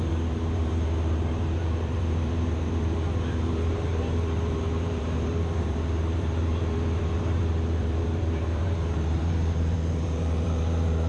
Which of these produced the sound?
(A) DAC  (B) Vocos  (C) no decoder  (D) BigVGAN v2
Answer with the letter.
D